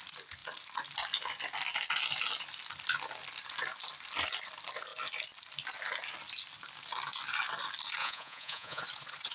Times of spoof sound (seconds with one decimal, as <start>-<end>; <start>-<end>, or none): 8.0-8.8